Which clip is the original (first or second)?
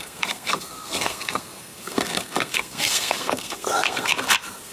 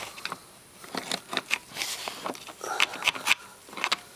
second